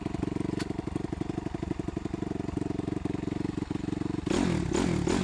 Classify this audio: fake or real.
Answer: real